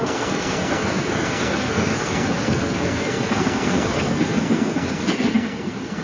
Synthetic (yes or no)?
yes